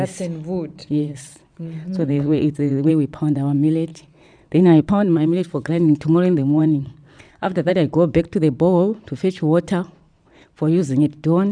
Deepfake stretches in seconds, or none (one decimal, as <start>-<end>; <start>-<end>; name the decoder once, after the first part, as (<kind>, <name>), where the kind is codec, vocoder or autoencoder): 0.8-2.9 (vocoder, WaveNeXt); 3.9-7.7